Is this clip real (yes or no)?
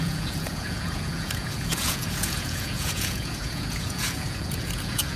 no